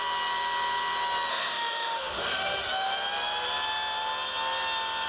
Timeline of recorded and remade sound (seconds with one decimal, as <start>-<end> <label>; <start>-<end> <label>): 0.0-1.3 recorded; 1.3-2.7 remade; 2.7-5.1 recorded